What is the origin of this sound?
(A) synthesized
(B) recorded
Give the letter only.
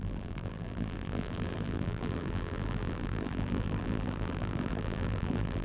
A